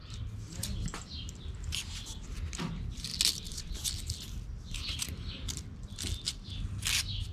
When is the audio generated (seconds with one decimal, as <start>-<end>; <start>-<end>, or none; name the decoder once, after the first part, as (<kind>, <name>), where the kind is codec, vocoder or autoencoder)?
none